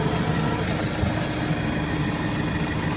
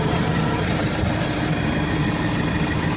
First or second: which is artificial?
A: second